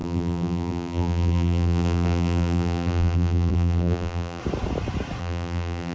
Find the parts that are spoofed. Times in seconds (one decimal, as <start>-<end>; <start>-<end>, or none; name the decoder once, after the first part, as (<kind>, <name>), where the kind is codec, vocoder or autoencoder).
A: 0.0-4.4 (vocoder, BigVGAN v2); 5.2-5.9